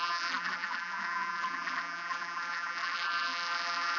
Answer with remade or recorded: remade